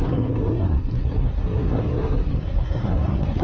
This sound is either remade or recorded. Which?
remade